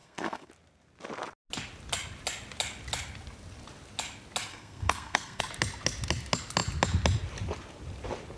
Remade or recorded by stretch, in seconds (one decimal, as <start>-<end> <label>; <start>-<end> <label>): 0.0-0.5 remade; 0.5-4.5 recorded; 4.5-5.4 remade; 5.4-8.4 recorded